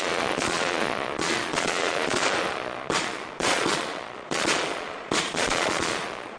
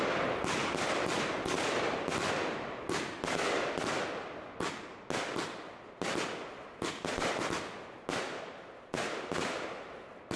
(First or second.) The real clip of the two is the second